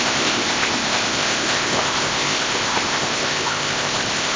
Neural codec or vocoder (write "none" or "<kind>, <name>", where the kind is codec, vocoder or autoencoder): codec, ZipCodec